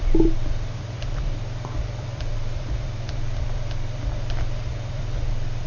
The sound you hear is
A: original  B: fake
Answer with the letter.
B